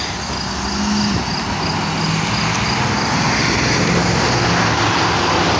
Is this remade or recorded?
recorded